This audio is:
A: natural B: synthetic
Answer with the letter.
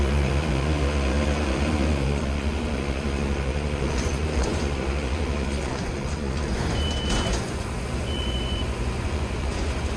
B